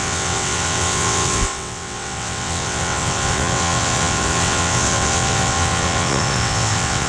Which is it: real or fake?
fake